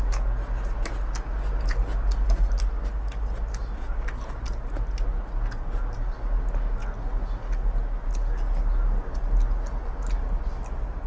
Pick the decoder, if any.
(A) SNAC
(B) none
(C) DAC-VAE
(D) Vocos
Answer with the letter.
B